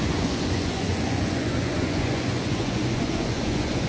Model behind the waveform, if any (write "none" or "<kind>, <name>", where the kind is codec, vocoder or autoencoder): vocoder, Vocos